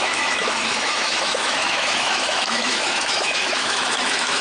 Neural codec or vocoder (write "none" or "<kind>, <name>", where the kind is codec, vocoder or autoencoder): autoencoder, DAC-VAE